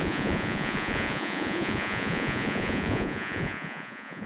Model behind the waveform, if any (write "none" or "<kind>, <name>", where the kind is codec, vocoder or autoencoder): vocoder, Vocos